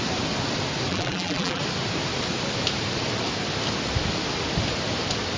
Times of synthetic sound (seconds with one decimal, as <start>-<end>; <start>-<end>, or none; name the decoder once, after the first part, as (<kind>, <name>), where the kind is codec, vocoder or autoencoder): 0.9-1.6 (vocoder, BigVGAN v2)